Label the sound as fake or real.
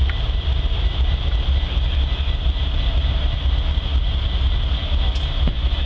real